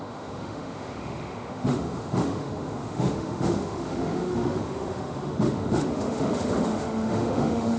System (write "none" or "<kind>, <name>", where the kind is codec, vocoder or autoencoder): autoencoder, DAC-VAE